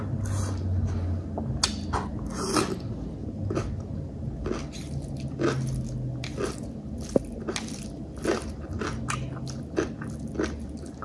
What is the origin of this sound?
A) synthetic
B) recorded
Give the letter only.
B